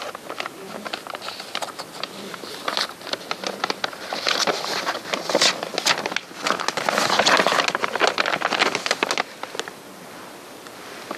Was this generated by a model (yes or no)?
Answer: no